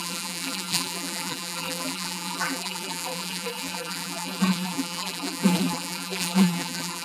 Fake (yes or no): yes